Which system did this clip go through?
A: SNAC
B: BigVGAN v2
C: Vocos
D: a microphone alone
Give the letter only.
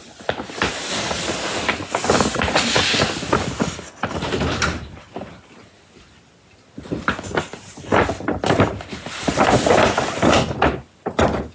D